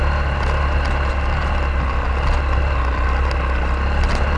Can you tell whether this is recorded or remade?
recorded